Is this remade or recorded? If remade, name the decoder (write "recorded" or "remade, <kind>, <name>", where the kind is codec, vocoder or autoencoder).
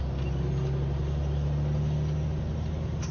recorded